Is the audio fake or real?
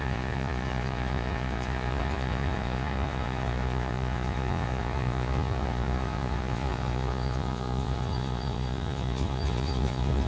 fake